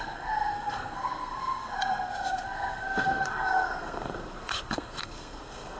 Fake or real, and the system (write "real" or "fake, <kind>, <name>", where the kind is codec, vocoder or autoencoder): fake, codec, SNAC